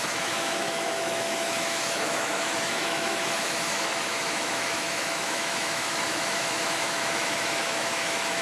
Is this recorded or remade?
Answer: remade